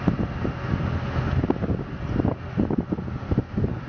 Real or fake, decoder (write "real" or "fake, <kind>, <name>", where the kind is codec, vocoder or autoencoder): real